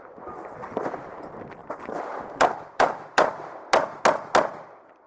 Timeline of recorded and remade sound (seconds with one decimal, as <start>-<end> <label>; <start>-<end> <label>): 0.0-1.6 recorded; 1.6-4.0 remade; 4.0-5.1 recorded